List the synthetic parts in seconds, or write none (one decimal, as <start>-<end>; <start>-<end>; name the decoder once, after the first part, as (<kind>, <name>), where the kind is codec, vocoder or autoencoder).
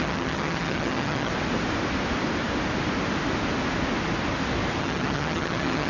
0.0-1.3 (vocoder, HiFi-GAN); 4.8-5.9